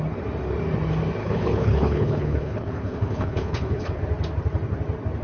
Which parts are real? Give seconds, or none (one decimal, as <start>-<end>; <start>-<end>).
0.0-1.2; 4.0-5.2